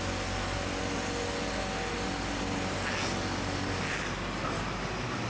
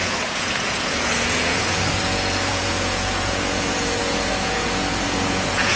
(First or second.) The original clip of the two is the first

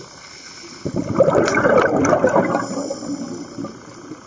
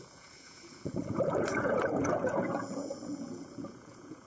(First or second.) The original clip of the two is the first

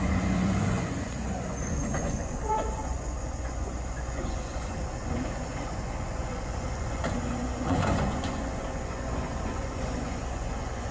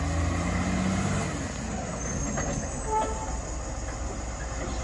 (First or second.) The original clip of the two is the second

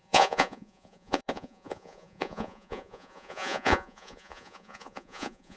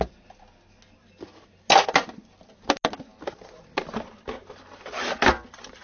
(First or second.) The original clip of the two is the second